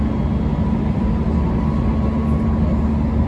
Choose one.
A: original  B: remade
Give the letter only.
A